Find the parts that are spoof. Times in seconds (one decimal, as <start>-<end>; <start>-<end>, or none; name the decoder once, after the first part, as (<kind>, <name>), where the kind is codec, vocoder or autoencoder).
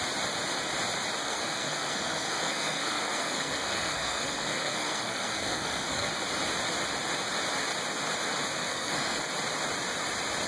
1.2-6.1 (codec, SNAC); 8.6-9.3